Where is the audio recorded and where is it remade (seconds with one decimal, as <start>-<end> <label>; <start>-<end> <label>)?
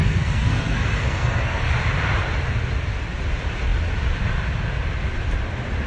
0.0-1.7 remade; 1.7-5.9 recorded